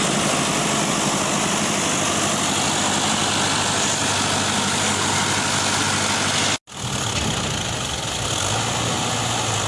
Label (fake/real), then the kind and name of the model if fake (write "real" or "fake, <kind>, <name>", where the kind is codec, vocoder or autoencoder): real